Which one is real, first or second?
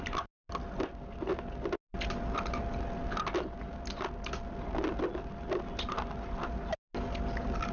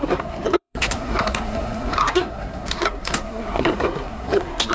first